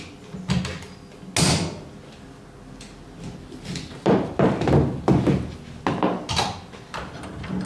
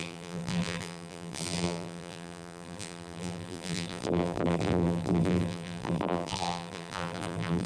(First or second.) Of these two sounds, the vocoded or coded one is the second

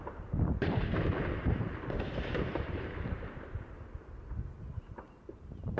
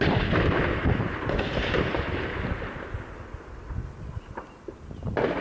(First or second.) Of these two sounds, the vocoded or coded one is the first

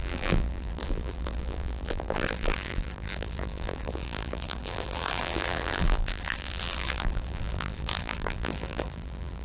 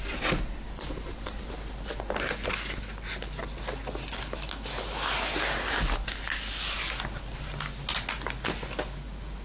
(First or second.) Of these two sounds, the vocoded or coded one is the first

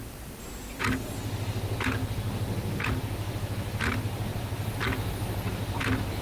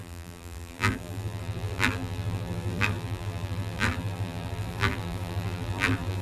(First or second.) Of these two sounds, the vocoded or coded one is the second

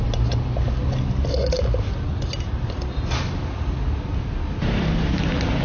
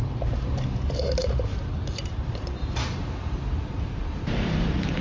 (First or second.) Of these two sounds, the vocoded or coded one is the second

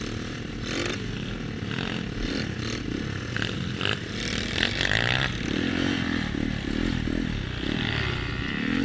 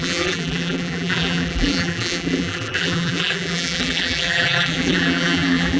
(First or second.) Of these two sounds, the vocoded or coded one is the second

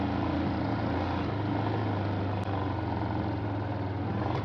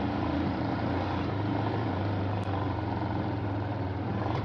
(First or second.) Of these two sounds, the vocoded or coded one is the second